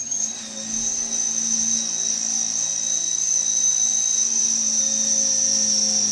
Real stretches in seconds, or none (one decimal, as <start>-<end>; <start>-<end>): 0.0-6.1